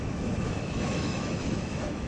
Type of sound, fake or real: fake